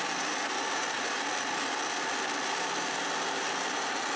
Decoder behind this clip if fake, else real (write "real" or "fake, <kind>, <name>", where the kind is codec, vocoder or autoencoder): fake, vocoder, BigVGAN v2